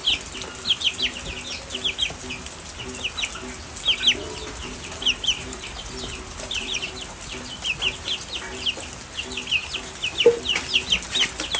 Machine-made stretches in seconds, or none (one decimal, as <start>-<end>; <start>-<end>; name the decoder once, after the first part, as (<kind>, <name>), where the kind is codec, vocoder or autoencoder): 4.6-6.9 (vocoder, BigVGAN v2)